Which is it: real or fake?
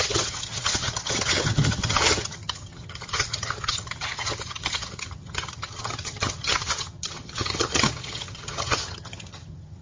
fake